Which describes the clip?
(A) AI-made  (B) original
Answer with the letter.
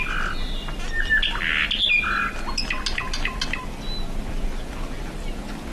B